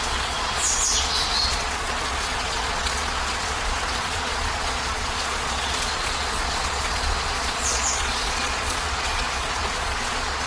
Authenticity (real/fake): fake